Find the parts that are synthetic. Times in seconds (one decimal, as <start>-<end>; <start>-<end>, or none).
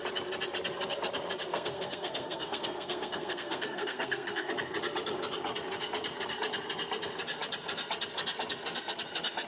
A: 1.5-4.5